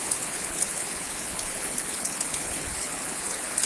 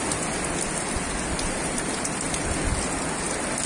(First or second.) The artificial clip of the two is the first